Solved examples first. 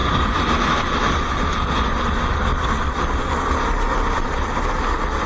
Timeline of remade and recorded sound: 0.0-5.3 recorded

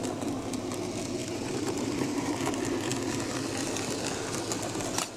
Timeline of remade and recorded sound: 0.0-1.2 recorded; 1.2-2.3 remade; 2.3-5.2 recorded

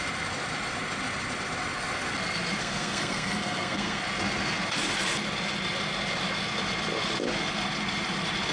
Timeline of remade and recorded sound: 0.0-2.6 recorded; 2.6-4.0 remade; 4.0-8.5 recorded